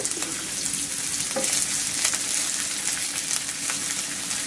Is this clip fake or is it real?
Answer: real